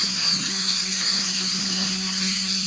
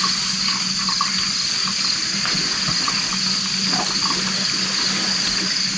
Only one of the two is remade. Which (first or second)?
first